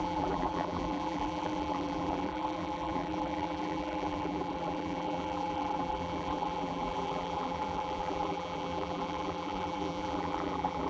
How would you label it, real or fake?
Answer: fake